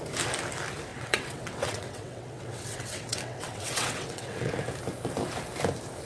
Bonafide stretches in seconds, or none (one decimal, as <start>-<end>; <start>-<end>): 0.0-0.9; 4.5-6.0

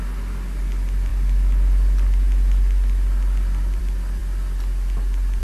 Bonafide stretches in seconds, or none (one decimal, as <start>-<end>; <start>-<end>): 0.0-5.4

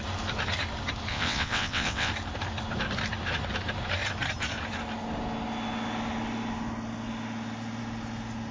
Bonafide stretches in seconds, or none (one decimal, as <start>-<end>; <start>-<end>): 0.0-1.1; 2.1-8.5

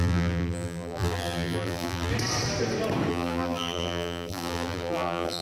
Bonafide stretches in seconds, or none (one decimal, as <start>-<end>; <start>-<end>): 2.1-3.1

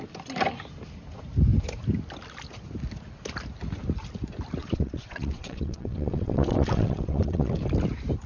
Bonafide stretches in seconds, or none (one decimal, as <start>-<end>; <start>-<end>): 0.0-4.6; 7.5-8.3